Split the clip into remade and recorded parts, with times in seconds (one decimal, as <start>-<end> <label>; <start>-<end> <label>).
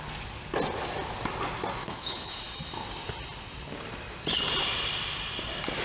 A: 0.0-1.8 recorded; 1.8-2.8 remade; 2.8-5.8 recorded